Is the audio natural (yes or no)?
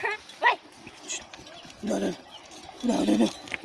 yes